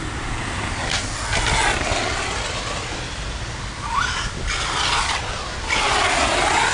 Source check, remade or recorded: recorded